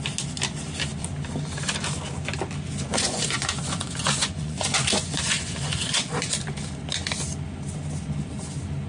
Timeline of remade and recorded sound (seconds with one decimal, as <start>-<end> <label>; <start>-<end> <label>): 0.0-2.9 recorded; 2.9-6.4 remade; 6.4-8.9 recorded